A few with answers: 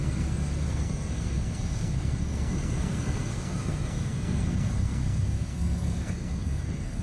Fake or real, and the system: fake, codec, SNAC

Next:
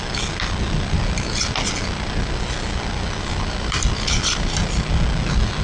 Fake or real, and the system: real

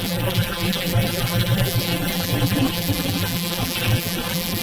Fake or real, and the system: fake, vocoder, BigVGAN v2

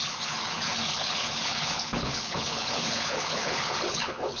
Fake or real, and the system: fake, codec, HILCodec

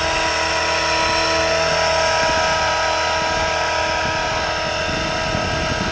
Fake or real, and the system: real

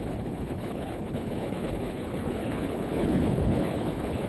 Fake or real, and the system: fake, codec, HILCodec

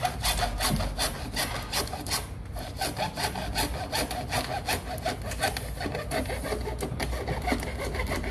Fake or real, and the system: real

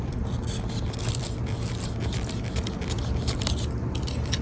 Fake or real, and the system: fake, vocoder, BigVGAN v2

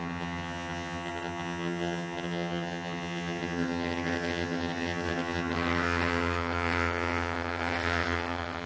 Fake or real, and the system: fake, vocoder, HiFi-GAN